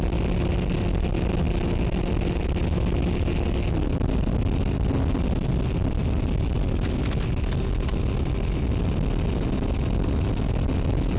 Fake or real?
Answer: real